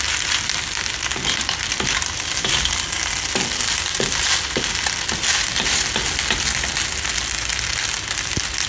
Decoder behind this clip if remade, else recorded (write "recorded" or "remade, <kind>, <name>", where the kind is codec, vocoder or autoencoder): recorded